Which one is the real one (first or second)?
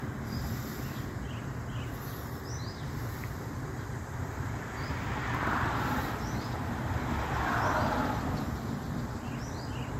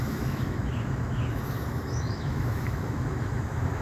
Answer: first